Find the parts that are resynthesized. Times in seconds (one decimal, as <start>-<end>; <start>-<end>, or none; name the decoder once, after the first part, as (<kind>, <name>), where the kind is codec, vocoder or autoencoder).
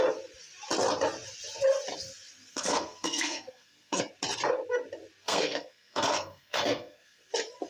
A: 2.5-4.0 (codec, SNAC); 5.2-7.3